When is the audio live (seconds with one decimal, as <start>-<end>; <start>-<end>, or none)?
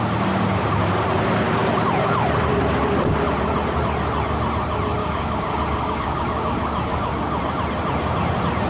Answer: 0.0-5.0; 7.4-8.7